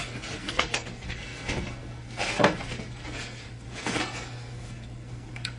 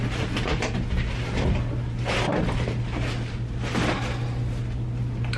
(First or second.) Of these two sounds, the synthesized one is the first